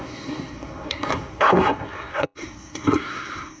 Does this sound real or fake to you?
fake